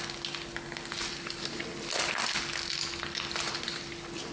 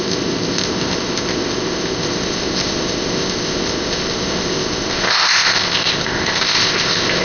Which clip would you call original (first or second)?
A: first